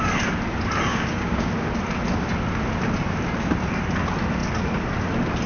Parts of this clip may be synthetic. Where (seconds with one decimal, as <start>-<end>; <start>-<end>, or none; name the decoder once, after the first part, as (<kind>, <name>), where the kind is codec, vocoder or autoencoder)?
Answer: 0.9-1.5 (codec, DAC)